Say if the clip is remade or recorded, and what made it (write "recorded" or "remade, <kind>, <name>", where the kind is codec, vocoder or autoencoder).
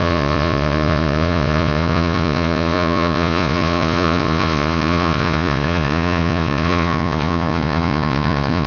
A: remade, vocoder, Vocos